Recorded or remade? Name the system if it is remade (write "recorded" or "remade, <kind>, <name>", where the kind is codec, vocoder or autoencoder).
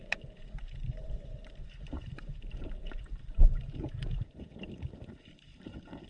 remade, vocoder, BigVGAN v2